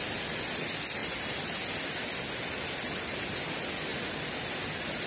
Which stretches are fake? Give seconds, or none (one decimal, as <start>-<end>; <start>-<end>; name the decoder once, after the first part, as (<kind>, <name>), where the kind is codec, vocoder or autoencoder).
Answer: none